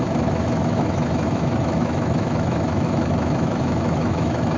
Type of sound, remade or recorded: remade